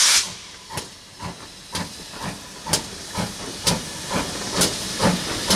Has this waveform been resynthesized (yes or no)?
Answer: no